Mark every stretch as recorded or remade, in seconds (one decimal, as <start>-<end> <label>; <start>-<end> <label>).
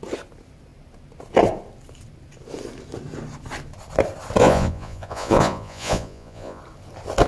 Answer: 0.0-4.4 recorded; 4.4-6.6 remade; 6.6-7.3 recorded